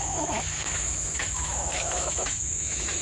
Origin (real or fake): fake